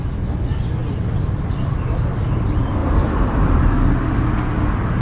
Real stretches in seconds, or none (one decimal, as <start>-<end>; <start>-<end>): 0.0-2.8; 3.6-5.0